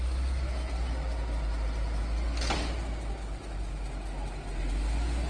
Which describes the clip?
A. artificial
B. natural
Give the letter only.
B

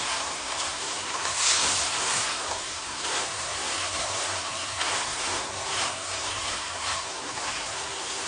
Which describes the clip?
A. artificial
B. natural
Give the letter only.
A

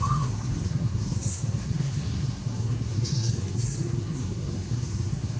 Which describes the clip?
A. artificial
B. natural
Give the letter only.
A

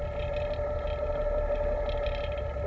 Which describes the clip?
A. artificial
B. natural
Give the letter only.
B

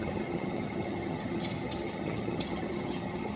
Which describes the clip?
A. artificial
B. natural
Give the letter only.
A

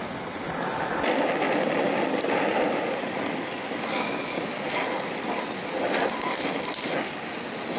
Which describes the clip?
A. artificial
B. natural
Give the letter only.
B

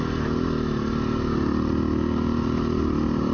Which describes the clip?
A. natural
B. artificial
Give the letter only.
A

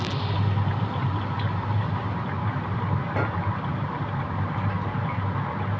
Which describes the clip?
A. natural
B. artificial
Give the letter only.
A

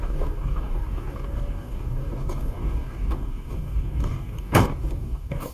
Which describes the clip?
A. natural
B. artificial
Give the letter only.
B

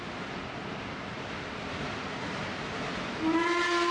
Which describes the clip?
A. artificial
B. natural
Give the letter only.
B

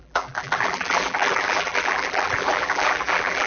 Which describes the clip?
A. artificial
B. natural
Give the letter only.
A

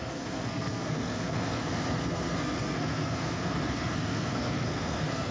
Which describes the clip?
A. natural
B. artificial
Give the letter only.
B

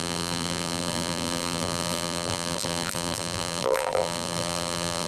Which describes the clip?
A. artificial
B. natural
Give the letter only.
A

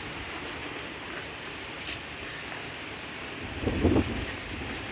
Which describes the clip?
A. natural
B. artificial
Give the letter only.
A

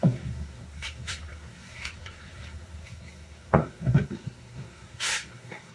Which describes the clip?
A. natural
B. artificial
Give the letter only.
B